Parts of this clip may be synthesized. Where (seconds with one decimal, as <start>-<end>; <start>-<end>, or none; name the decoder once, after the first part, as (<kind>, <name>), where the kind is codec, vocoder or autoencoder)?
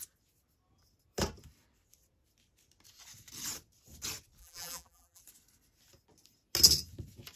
4.4-5.2 (vocoder, BigVGAN v2)